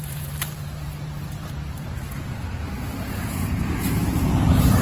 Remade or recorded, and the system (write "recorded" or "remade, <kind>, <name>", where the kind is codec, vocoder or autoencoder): remade, vocoder, BigVGAN v2